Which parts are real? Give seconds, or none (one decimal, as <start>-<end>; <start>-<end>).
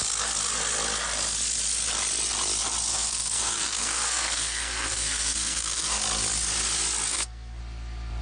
0.0-2.9; 6.0-7.1; 7.6-8.2